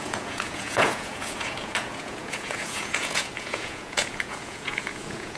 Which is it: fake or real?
fake